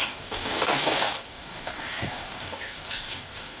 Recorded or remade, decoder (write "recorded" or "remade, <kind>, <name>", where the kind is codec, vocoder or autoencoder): remade, codec, DAC